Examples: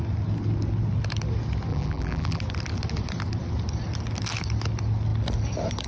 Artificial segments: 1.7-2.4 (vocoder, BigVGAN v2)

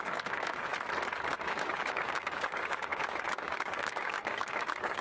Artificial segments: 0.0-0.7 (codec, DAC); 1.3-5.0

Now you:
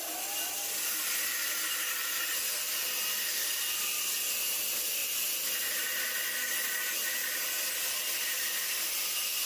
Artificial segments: none

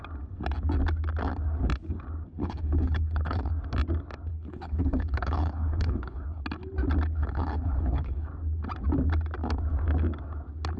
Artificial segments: 2.4-3.5 (codec, HILCodec); 4.3-6.4; 7.2-8.3